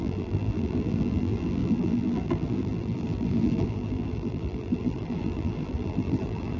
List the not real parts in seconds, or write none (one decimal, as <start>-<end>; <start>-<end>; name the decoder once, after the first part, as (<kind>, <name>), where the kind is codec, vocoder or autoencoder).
0.0-6.6 (vocoder, BigVGAN v2)